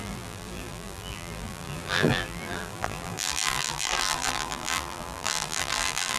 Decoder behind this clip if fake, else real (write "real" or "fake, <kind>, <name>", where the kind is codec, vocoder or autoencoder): fake, vocoder, BigVGAN v2